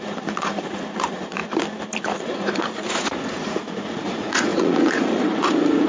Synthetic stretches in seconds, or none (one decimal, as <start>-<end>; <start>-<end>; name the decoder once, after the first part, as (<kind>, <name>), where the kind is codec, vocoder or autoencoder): 0.0-1.4 (vocoder, Vocos); 2.0-5.9